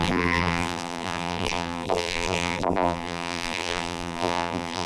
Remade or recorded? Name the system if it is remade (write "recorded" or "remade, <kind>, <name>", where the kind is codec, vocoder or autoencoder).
remade, vocoder, BigVGAN v2